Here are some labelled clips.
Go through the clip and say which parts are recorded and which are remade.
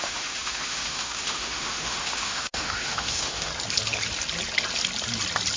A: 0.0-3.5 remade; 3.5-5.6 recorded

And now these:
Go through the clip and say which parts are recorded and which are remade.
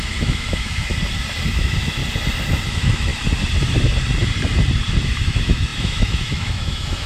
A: 0.0-0.9 remade; 0.9-1.5 recorded; 1.5-2.0 remade; 2.0-2.7 recorded; 2.7-3.1 remade; 3.1-5.0 recorded; 5.0-7.1 remade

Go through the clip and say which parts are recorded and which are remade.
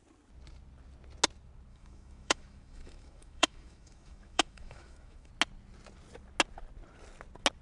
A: 0.0-1.7 recorded; 1.7-5.3 remade; 5.3-7.6 recorded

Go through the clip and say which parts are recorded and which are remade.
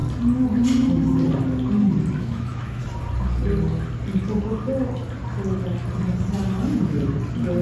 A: 0.0-2.2 recorded; 2.2-2.8 remade; 2.8-7.6 recorded